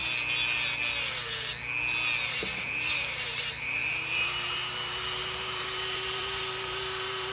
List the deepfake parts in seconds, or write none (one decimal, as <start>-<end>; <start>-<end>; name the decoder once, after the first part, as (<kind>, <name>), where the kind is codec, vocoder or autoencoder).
2.3-7.3 (vocoder, BigVGAN v2)

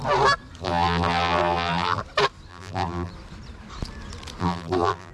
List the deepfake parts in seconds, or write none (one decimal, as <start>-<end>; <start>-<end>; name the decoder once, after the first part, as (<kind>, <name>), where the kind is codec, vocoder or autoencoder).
0.6-2.0 (vocoder, BigVGAN v2); 2.5-3.1; 4.4-5.1

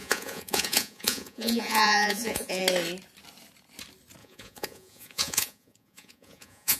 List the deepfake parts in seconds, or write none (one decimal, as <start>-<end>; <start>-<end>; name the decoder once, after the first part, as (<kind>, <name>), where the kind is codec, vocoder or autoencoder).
0.0-2.6 (vocoder, Vocos); 4.2-6.8

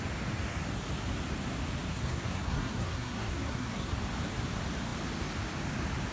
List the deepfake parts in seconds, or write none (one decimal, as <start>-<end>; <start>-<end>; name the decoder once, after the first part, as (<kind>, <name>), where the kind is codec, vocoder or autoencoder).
1.9-3.9 (codec, SNAC)

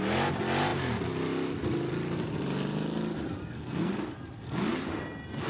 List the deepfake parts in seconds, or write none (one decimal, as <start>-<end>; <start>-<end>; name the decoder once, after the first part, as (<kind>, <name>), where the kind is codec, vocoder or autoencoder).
3.4-3.9 (codec, SNAC)